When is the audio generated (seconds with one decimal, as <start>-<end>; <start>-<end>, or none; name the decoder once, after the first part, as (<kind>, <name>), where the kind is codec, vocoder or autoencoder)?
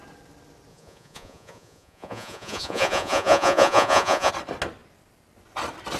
0.7-4.3 (vocoder, Vocos)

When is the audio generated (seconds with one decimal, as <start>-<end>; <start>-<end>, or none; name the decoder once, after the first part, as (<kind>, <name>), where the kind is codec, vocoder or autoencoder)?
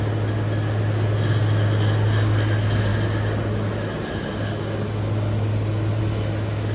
none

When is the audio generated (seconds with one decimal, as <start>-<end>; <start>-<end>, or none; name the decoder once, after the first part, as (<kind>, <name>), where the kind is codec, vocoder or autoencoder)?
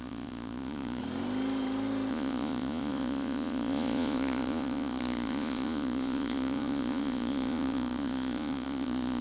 0.0-1.0 (vocoder, Vocos); 2.1-9.2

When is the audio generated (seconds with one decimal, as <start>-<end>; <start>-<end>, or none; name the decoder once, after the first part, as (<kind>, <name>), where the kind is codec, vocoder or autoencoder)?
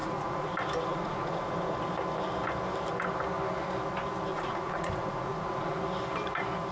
0.0-0.5 (vocoder, Vocos); 0.9-1.7; 4.3-5.8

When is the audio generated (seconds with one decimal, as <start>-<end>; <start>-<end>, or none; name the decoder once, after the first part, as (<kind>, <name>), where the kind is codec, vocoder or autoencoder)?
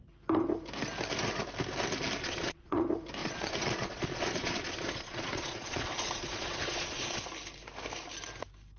2.2-2.8 (vocoder, Vocos); 3.2-7.2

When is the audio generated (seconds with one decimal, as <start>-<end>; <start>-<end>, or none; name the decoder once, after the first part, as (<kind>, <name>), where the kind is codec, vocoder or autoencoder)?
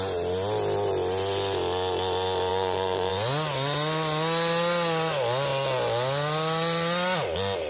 2.5-3.1 (vocoder, Vocos)